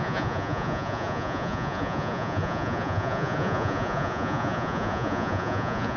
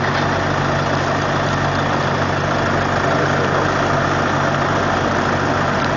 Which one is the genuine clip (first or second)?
second